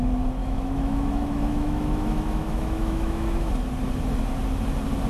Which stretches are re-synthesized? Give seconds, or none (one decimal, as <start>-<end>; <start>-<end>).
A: 0.4-3.5